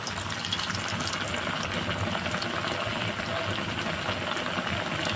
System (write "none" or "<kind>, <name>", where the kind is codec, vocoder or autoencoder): none